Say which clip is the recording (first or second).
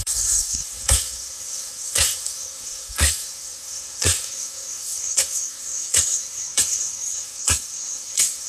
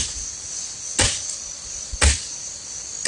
second